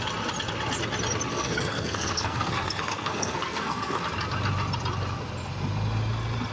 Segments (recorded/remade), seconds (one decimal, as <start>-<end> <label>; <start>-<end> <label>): 0.0-1.3 recorded; 1.3-4.0 remade; 4.0-6.5 recorded